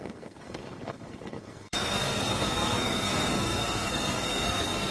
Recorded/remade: remade